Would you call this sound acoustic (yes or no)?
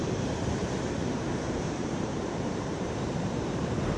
no